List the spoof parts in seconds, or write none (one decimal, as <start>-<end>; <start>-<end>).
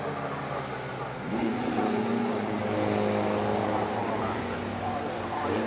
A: 1.4-2.6; 4.0-4.6